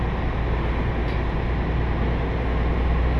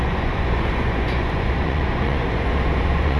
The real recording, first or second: first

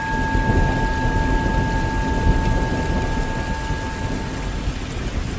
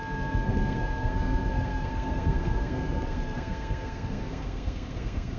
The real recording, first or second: first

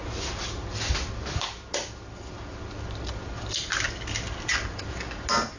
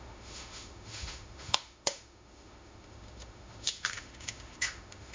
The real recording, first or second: first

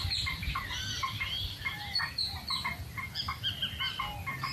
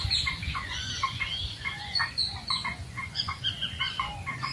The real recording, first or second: first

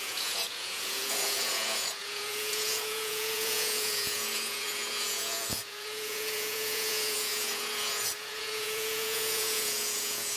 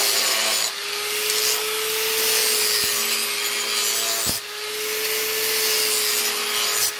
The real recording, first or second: second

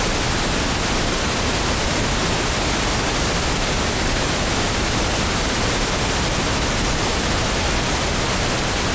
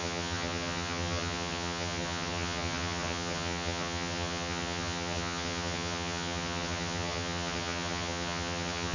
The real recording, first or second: first